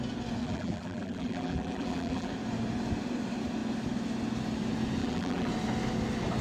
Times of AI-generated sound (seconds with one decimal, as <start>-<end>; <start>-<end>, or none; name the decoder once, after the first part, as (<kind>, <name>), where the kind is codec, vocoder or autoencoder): 0.4-2.3 (vocoder, BigVGAN v2); 5.0-5.5